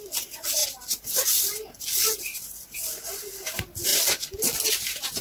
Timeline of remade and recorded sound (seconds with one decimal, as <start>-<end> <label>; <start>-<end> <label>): 0.0-5.2 recorded